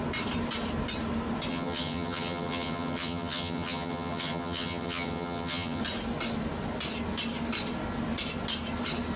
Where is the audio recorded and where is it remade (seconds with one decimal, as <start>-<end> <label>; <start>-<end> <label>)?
0.0-1.5 recorded; 1.5-5.8 remade; 5.8-9.2 recorded

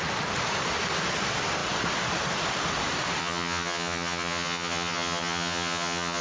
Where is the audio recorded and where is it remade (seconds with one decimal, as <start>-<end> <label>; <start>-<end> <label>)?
0.0-3.2 recorded; 3.2-6.2 remade

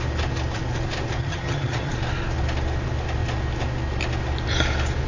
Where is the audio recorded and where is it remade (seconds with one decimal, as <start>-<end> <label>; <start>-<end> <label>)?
0.0-1.2 recorded; 1.2-1.9 remade; 1.9-5.1 recorded

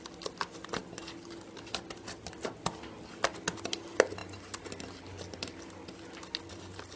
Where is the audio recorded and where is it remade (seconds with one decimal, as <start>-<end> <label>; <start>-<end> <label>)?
0.0-7.0 recorded

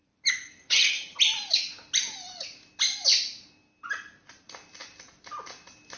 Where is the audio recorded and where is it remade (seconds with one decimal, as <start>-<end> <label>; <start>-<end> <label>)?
0.0-0.6 recorded; 0.6-1.2 remade; 1.2-6.0 recorded

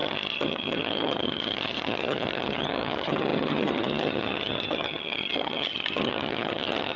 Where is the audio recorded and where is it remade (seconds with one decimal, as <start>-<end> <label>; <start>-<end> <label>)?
0.0-7.0 remade